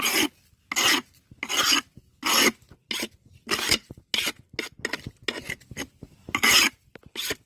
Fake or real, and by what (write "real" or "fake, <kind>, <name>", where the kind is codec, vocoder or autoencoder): real